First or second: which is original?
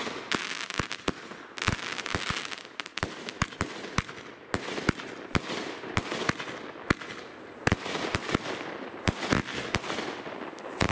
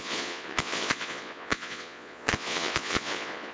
first